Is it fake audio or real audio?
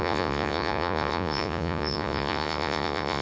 fake